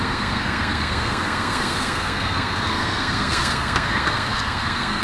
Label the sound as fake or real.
fake